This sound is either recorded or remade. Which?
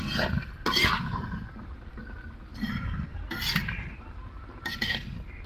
recorded